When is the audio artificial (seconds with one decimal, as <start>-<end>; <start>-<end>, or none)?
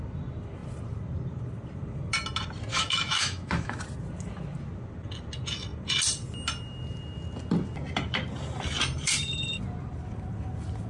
2.7-3.8